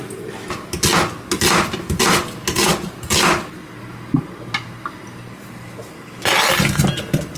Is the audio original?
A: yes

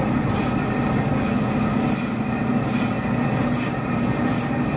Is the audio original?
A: yes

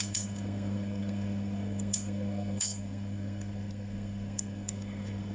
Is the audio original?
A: no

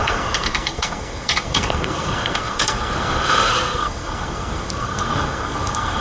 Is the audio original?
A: no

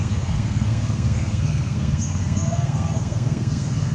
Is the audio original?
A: no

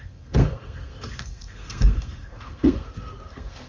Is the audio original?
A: no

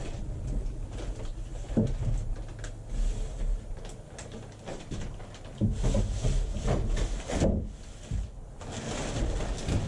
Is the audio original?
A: yes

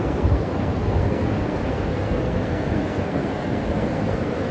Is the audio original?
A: no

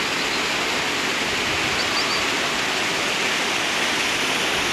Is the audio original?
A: yes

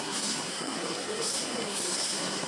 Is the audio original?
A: no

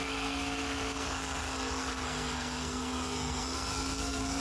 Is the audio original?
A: no